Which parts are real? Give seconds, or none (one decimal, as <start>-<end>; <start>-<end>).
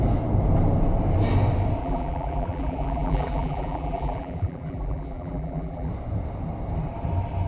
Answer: 0.0-1.8; 5.9-7.5